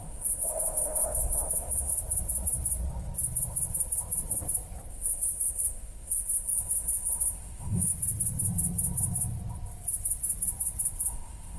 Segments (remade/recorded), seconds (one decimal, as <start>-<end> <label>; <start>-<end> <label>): 0.0-1.9 remade; 1.9-4.9 recorded; 4.9-7.9 remade; 7.9-11.1 recorded; 11.1-11.6 remade